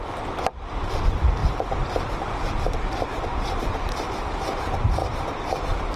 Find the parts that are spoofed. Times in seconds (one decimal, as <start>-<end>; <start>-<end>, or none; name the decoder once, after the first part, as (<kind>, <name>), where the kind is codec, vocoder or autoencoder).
1.4-4.3 (vocoder, BigVGAN v2)